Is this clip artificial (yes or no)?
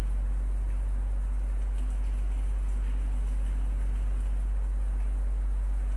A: no